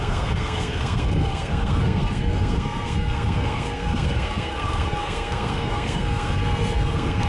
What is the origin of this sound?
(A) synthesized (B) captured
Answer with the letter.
A